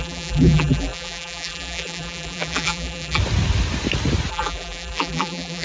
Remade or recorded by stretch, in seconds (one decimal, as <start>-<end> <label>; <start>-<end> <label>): 0.0-3.2 remade; 3.2-4.3 recorded; 4.3-5.6 remade